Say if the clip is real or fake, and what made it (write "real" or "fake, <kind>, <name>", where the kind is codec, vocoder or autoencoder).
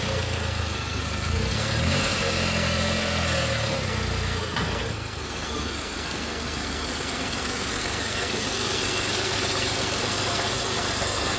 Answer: fake, codec, SNAC